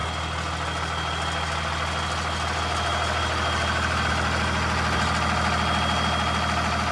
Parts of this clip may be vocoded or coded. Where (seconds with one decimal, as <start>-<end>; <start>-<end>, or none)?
none